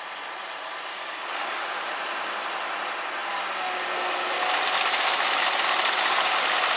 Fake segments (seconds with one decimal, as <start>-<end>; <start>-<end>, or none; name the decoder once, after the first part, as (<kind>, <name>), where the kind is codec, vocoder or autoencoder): 0.9-1.9 (codec, DAC)